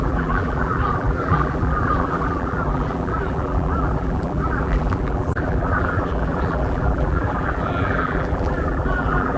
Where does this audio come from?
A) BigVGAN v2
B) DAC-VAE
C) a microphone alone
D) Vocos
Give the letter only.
A